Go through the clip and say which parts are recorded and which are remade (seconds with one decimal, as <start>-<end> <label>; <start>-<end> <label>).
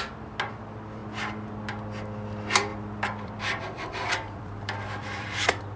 0.0-2.7 recorded; 2.7-5.8 remade